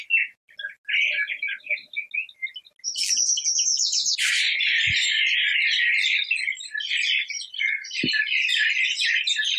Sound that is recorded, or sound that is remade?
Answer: recorded